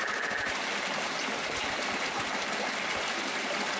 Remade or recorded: recorded